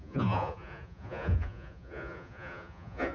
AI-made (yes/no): yes